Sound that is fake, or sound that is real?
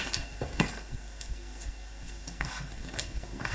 fake